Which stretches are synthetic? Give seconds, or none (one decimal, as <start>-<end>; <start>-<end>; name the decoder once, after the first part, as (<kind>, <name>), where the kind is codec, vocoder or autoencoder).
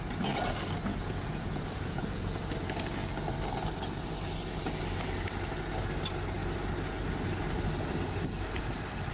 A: 0.9-2.4 (vocoder, Vocos)